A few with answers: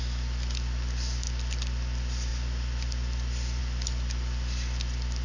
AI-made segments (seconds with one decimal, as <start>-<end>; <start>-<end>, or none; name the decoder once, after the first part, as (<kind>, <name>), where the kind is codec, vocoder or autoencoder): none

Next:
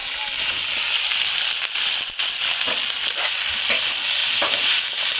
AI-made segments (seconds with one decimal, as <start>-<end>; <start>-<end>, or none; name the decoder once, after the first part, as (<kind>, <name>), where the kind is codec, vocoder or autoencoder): 0.0-4.2 (vocoder, BigVGAN v2)

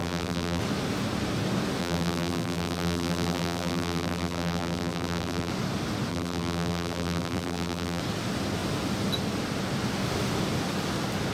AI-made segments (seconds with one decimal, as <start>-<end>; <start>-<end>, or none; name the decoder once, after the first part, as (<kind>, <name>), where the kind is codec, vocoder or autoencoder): 0.0-0.6 (vocoder, BigVGAN v2); 1.8-5.5; 6.1-8.0